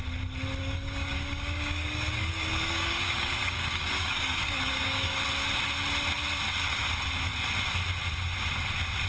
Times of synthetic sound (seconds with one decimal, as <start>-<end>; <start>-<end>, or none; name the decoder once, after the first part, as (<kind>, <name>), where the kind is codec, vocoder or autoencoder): 0.6-5.2 (codec, DAC)